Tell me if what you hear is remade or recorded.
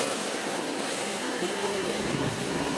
remade